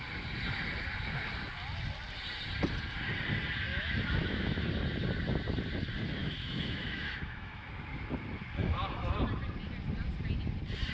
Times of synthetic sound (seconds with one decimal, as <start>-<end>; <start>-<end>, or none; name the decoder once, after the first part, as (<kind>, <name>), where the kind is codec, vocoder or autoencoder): 3.7-4.6 (autoencoder, DAC-VAE); 6.2-7.7; 8.6-9.1